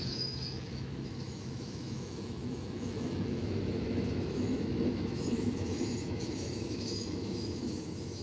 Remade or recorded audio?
remade